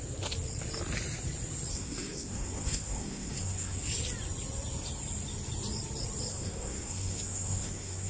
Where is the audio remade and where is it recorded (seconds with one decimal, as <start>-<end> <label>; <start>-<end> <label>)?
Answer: 0.0-1.7 recorded; 1.7-3.8 remade; 3.8-6.3 recorded; 6.3-8.1 remade